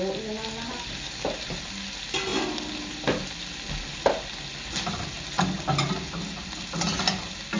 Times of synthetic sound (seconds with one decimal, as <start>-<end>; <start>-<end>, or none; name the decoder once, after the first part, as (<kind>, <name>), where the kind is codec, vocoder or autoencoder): none